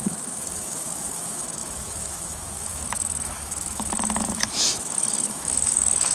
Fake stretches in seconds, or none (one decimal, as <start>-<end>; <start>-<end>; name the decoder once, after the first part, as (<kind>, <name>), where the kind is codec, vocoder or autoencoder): 0.0-6.1 (autoencoder, DAC-VAE)

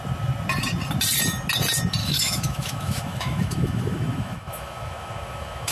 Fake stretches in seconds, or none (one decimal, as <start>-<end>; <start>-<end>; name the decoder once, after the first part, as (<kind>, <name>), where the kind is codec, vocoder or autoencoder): 2.0-5.7 (autoencoder, DAC-VAE)

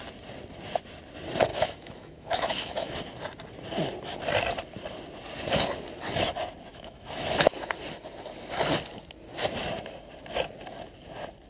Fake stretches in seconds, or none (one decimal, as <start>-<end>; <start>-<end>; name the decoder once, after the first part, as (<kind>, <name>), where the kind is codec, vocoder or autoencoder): 1.5-3.0 (autoencoder, DAC-VAE); 6.7-7.7

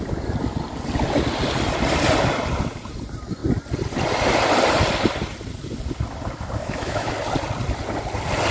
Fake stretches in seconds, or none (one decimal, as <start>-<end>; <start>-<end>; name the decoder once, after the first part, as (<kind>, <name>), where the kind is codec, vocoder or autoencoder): 6.6-7.1 (autoencoder, DAC-VAE)

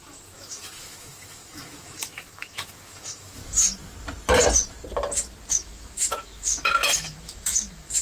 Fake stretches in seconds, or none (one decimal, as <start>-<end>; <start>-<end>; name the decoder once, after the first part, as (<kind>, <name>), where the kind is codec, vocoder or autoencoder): 0.0-3.4 (autoencoder, DAC-VAE); 5.5-8.0

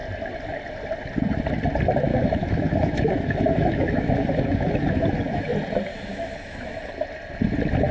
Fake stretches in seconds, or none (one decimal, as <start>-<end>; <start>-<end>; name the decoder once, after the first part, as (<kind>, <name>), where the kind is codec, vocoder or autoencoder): 2.1-5.5 (autoencoder, DAC-VAE); 5.9-6.7

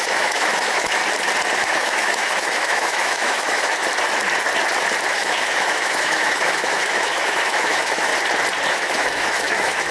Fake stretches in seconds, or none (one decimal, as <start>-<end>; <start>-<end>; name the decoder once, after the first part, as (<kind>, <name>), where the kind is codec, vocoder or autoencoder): 0.0-1.0 (autoencoder, DAC-VAE); 1.6-3.8; 5.1-8.1; 8.7-9.9

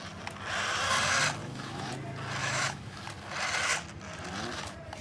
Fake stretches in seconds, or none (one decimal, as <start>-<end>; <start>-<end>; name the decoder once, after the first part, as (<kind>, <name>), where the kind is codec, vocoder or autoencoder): 1.4-1.9 (autoencoder, DAC-VAE); 2.4-3.0